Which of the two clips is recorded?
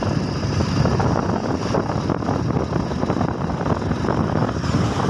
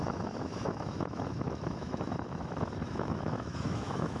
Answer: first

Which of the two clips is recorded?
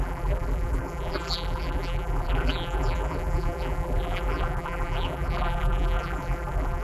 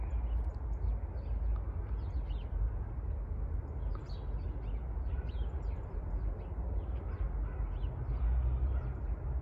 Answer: second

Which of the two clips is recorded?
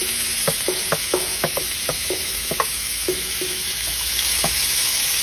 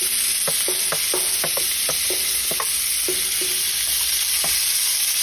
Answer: second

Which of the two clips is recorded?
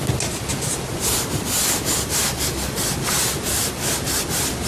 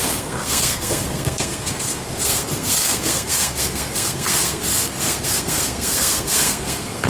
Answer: first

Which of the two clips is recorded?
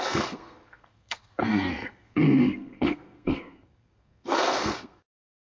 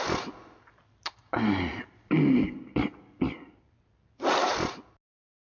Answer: second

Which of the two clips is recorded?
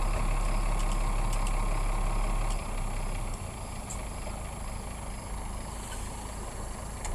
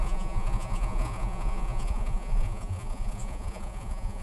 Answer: first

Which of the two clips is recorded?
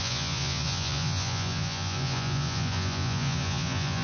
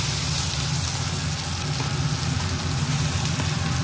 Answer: second